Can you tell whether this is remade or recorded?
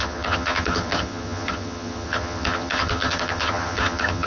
remade